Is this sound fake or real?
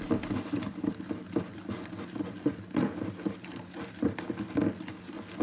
real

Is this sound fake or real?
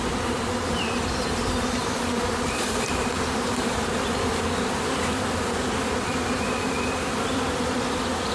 fake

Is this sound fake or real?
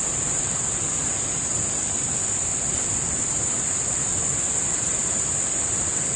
fake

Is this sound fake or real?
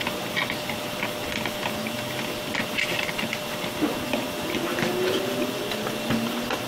real